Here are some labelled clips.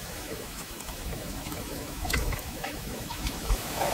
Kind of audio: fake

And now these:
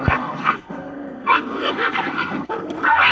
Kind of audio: fake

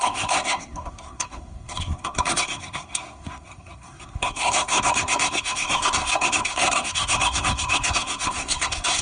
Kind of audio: fake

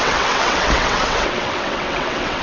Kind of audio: fake